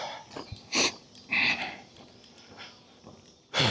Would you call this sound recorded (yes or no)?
no